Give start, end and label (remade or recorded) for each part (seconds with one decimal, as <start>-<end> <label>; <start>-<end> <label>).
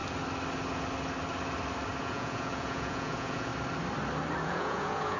0.0-2.0 recorded; 2.0-3.5 remade; 3.5-4.4 recorded; 4.4-5.2 remade